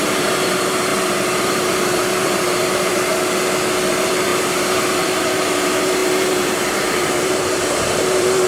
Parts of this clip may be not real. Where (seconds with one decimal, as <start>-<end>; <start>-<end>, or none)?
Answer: 0.0-3.1; 3.9-8.5